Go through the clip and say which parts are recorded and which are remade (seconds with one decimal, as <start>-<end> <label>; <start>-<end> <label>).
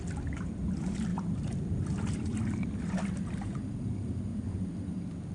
0.0-1.1 recorded; 1.1-3.6 remade; 3.6-4.3 recorded; 4.3-4.8 remade; 4.8-5.3 recorded